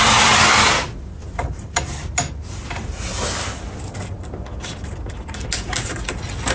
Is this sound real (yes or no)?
yes